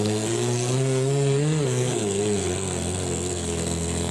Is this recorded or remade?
remade